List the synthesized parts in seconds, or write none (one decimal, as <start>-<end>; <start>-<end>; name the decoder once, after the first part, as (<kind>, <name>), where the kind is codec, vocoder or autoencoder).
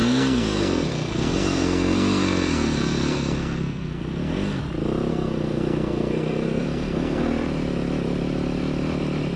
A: 0.0-4.6 (codec, SNAC); 5.1-7.3